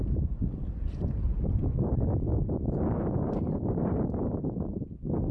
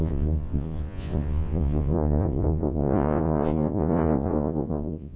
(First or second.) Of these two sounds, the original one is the first